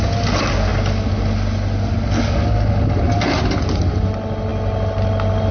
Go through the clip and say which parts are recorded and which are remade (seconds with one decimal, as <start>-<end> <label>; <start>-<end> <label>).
0.0-5.5 recorded